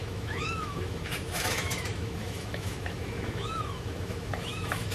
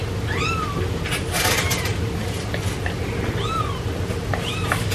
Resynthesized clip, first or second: first